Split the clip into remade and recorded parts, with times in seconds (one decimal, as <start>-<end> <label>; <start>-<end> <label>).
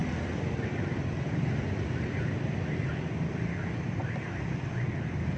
0.0-2.3 remade; 2.3-4.0 recorded; 4.0-4.6 remade; 4.6-5.4 recorded